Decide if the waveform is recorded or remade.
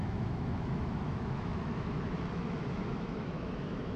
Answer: remade